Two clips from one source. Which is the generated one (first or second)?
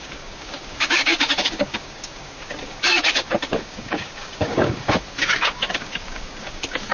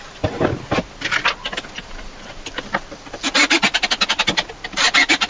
first